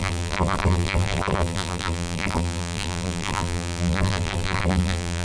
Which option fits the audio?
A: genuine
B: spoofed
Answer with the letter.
B